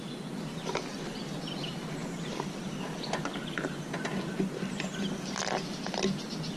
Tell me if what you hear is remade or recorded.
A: recorded